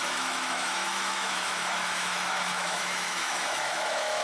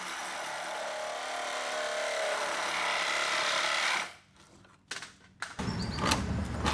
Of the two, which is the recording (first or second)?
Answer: second